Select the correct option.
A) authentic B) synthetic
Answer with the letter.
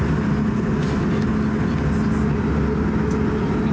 A